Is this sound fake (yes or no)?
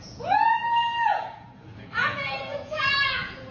yes